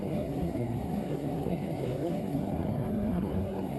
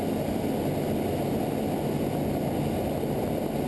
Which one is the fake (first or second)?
first